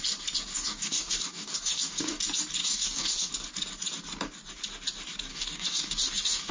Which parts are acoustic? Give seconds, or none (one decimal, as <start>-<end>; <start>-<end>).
0.0-0.5; 2.2-2.6; 3.3-5.3